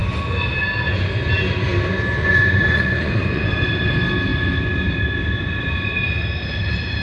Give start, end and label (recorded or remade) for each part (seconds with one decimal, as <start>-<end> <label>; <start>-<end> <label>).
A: 0.0-2.2 recorded; 2.2-3.5 remade; 3.5-7.0 recorded